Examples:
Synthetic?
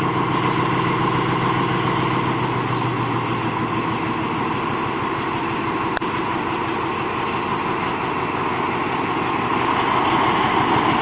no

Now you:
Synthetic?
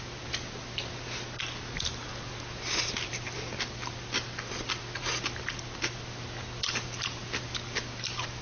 no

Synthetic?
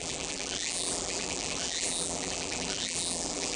yes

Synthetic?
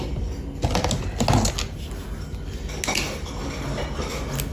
no